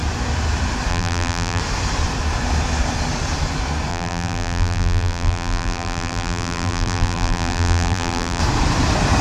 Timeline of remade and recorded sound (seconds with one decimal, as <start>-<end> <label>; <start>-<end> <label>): 0.0-0.9 recorded; 0.9-1.6 remade; 1.6-3.9 recorded; 3.9-8.4 remade; 8.4-9.2 recorded